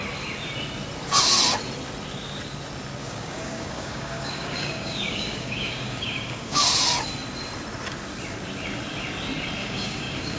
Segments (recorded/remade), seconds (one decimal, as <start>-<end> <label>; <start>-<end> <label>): 0.0-3.0 recorded; 3.0-6.7 remade; 6.7-9.6 recorded; 9.6-10.4 remade